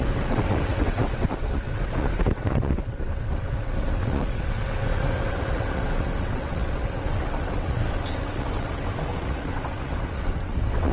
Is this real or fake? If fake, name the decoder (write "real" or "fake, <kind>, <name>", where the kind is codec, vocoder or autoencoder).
fake, vocoder, WaveNeXt